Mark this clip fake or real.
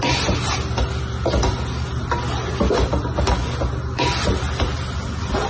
real